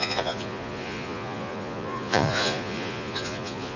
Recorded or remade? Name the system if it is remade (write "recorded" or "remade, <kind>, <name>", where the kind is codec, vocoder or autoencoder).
remade, vocoder, Vocos